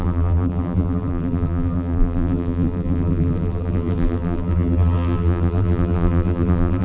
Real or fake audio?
fake